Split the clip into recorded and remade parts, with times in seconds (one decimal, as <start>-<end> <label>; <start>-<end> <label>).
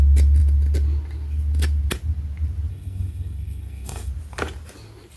0.0-2.7 recorded; 2.7-4.1 remade; 4.1-5.2 recorded